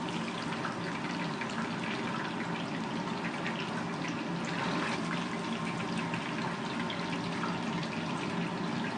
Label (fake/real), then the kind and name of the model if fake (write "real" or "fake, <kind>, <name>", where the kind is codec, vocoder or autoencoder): real